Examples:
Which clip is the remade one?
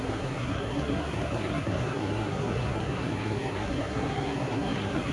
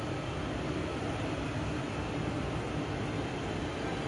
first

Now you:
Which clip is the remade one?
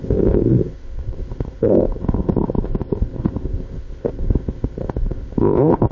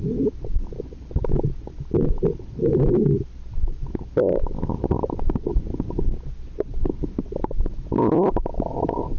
first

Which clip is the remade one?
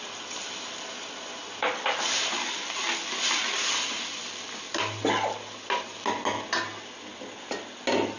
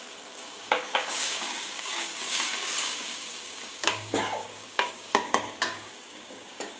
second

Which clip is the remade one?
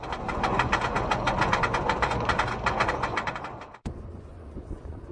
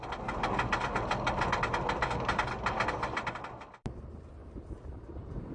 first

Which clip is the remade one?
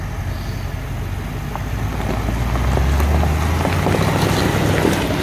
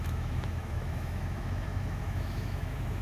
second